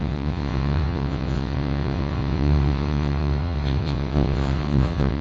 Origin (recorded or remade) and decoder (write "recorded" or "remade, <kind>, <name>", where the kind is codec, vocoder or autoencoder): remade, vocoder, WaveNeXt